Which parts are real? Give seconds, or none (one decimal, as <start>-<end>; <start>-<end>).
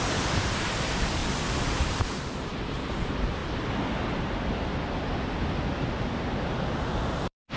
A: 1.2-1.9; 3.4-6.9